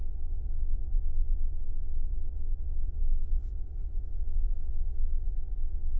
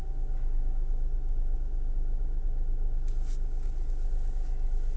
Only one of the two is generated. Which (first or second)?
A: first